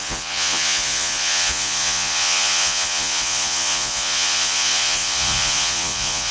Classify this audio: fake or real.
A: fake